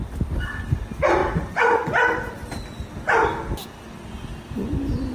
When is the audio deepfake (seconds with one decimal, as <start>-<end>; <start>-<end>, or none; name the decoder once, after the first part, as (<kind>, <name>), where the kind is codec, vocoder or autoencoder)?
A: 1.2-1.9 (vocoder, BigVGAN v2)